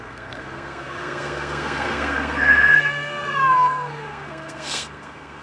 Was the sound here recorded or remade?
remade